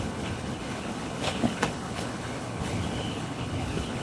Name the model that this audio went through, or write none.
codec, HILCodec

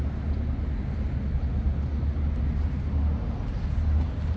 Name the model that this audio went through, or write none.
none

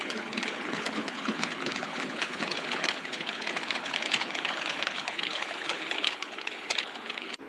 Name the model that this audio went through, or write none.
codec, HILCodec